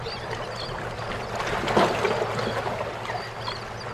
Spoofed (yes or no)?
no